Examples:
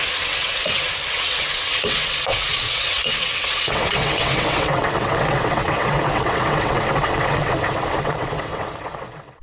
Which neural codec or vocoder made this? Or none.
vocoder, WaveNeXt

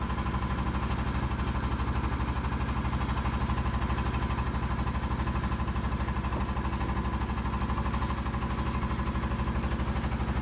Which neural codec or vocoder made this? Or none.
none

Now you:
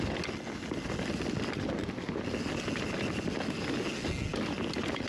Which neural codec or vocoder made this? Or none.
none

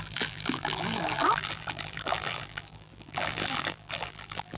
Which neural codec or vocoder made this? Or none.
vocoder, BigVGAN v2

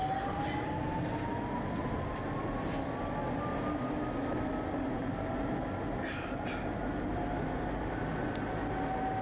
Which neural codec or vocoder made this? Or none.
none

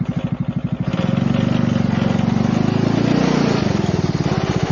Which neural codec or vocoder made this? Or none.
none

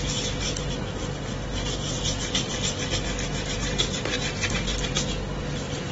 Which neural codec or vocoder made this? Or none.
none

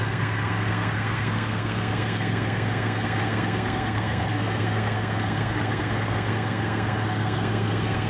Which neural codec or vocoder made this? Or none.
codec, SNAC